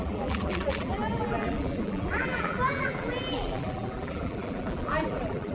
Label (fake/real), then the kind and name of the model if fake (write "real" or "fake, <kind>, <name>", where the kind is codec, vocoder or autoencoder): fake, vocoder, BigVGAN v2